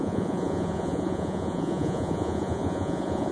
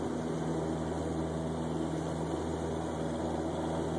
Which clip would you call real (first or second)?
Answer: second